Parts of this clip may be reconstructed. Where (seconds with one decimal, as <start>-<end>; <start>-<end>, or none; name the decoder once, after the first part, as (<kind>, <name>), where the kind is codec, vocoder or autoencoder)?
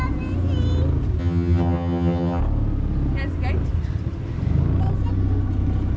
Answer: 1.2-2.4 (vocoder, HiFi-GAN)